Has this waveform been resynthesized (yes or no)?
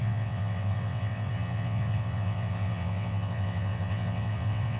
yes